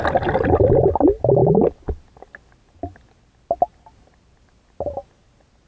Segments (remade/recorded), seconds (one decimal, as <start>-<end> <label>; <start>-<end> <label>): 0.0-5.7 recorded